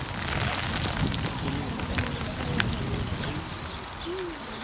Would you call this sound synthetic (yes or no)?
no